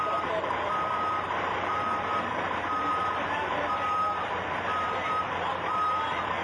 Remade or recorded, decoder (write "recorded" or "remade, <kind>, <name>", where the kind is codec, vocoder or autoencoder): remade, vocoder, BigVGAN v2